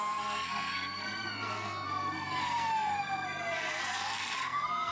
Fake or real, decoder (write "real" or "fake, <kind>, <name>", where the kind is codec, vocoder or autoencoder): fake, codec, SNAC